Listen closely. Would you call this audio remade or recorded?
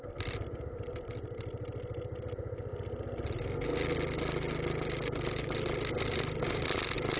recorded